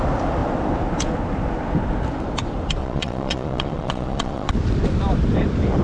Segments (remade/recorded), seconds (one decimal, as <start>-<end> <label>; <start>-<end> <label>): 0.0-2.8 recorded; 2.8-4.5 remade; 4.5-5.8 recorded